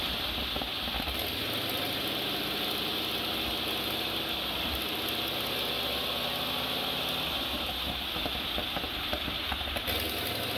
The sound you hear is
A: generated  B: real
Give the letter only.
B